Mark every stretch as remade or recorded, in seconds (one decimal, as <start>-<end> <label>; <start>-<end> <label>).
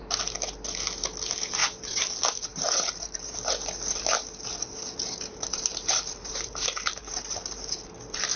0.0-1.6 recorded; 1.6-3.5 remade; 3.5-5.3 recorded; 5.3-7.9 remade; 7.9-8.4 recorded